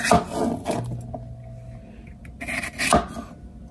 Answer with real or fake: real